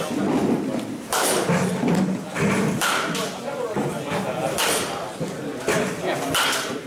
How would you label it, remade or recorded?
recorded